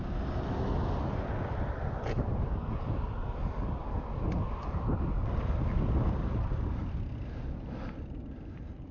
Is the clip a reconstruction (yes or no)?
no